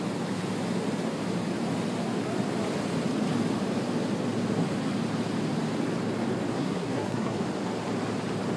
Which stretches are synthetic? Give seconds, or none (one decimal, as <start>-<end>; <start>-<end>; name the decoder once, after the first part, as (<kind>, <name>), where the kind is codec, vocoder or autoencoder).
6.5-7.4 (codec, SNAC)